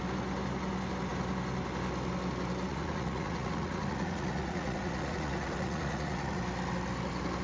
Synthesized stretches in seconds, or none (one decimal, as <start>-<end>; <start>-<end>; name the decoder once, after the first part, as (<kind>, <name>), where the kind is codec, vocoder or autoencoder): 2.7-6.4 (vocoder, Vocos)